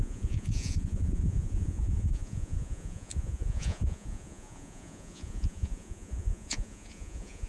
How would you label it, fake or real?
fake